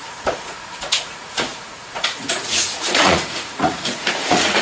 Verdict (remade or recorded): remade